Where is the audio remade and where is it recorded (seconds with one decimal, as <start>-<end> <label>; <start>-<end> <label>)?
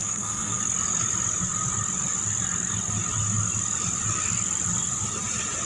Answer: 0.0-0.6 remade; 0.6-5.7 recorded